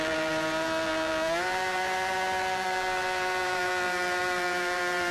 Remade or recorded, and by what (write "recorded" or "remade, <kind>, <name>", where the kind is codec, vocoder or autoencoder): remade, vocoder, BigVGAN v2